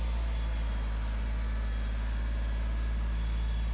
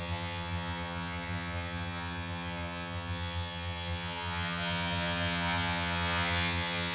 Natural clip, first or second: first